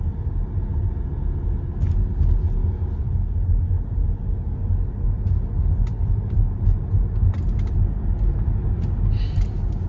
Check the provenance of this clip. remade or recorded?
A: recorded